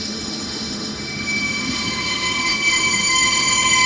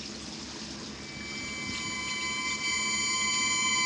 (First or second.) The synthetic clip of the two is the first